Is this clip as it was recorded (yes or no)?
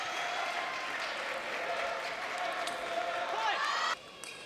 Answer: yes